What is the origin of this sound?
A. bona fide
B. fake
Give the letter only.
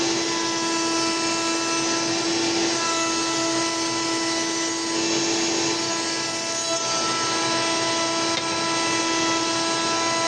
A